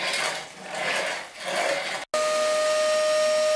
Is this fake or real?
real